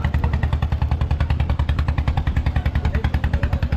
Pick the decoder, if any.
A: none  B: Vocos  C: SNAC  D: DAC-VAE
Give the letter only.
A